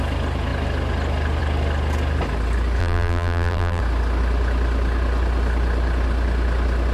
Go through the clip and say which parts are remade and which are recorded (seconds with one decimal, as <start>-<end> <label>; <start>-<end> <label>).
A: 0.0-2.8 recorded; 2.8-3.8 remade; 3.8-6.9 recorded